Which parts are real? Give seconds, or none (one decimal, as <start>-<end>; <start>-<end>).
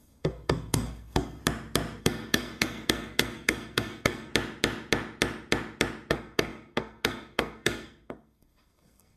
1.4-2.0; 4.3-6.1